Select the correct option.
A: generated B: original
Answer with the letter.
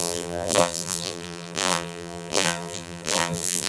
A